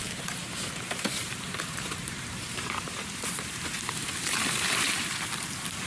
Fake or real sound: fake